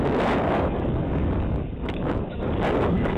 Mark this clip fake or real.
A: fake